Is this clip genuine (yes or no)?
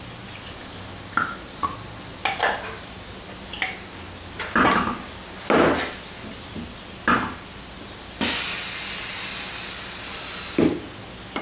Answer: yes